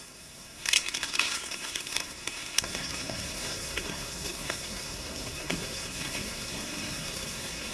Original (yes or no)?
no